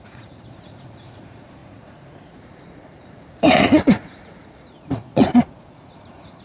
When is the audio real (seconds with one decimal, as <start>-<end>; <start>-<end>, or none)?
none